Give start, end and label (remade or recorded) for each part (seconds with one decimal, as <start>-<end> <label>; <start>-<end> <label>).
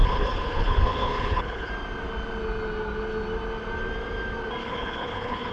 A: 0.0-1.7 remade; 1.7-4.6 recorded; 4.6-5.5 remade